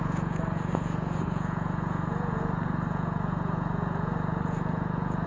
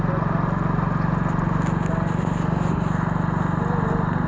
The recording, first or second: second